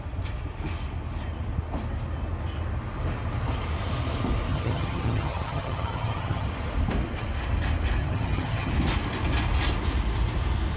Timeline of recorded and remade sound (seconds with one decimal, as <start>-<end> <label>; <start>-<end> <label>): 0.0-4.5 recorded; 4.5-6.5 remade; 6.5-8.0 recorded; 8.0-8.7 remade; 8.7-10.8 recorded